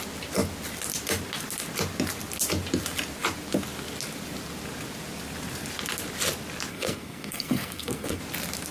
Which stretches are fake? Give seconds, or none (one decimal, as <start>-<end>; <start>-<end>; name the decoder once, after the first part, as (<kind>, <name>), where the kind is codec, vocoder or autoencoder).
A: 6.7-8.2 (codec, SNAC)